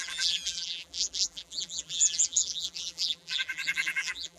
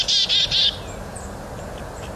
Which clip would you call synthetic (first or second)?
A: first